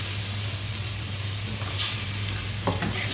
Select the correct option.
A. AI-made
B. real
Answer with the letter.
A